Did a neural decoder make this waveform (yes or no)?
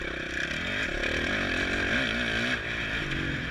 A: no